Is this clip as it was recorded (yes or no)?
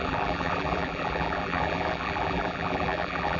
no